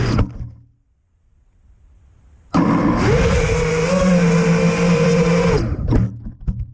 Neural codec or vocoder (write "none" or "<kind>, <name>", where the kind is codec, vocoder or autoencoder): none